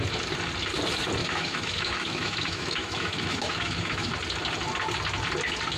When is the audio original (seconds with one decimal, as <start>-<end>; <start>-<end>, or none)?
0.0-1.2; 4.1-5.8